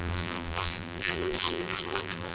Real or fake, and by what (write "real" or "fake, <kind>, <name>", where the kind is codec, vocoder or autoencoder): fake, vocoder, BigVGAN v2